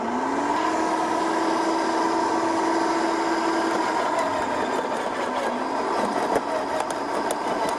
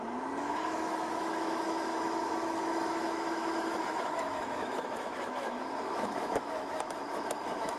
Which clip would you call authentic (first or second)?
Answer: first